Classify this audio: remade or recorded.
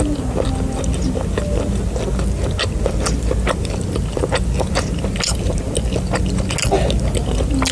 recorded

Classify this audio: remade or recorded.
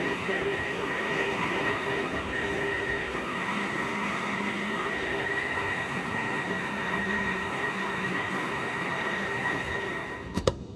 remade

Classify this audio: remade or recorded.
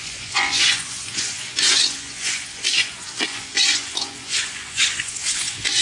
remade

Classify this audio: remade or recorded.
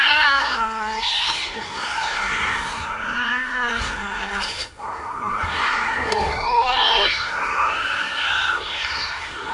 remade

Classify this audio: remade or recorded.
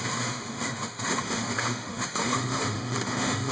remade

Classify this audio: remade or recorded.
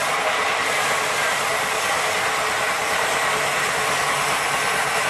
recorded